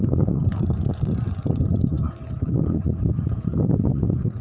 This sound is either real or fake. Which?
fake